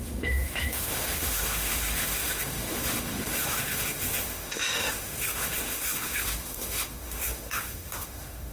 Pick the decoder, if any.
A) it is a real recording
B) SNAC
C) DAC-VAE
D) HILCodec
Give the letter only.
C